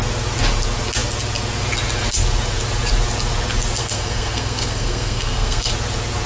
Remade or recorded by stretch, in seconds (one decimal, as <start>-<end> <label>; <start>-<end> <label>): 0.0-3.8 recorded; 3.8-5.7 remade; 5.7-6.3 recorded